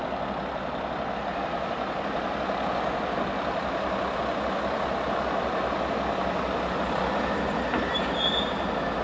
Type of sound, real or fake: real